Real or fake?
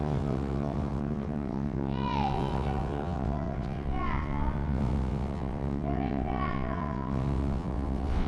fake